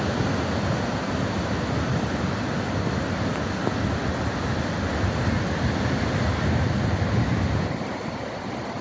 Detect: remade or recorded recorded